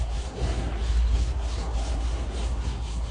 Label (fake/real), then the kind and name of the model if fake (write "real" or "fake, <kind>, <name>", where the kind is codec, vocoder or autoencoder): fake, codec, SNAC